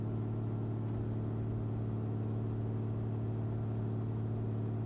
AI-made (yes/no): no